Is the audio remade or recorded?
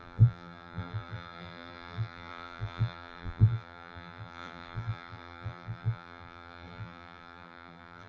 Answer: remade